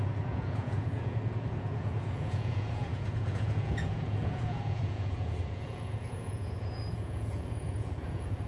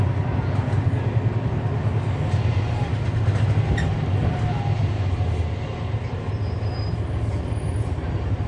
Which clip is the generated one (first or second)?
first